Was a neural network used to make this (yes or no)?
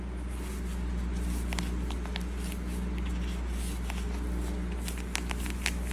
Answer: no